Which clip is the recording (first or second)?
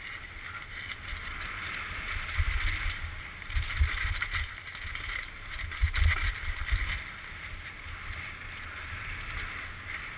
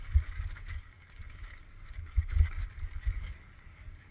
first